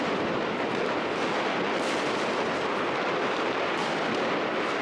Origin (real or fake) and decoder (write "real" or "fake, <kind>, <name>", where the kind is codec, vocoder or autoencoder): real